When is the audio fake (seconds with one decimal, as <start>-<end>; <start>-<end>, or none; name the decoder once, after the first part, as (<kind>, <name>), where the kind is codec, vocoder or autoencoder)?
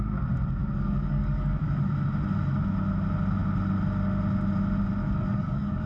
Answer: 0.6-1.9 (codec, DAC); 5.0-5.9